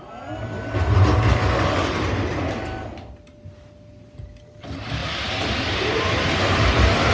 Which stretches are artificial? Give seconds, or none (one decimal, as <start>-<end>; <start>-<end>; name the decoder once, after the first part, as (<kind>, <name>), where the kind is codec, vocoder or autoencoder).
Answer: 5.0-7.1 (vocoder, BigVGAN v2)